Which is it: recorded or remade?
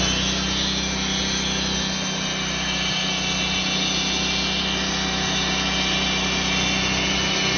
recorded